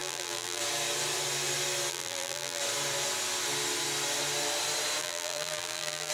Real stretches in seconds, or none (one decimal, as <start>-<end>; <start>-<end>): 0.6-1.9; 2.6-5.0